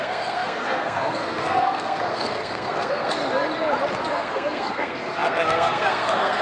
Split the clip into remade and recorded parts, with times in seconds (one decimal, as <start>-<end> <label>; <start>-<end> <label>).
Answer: 0.0-3.2 remade; 3.2-4.1 recorded; 4.1-6.4 remade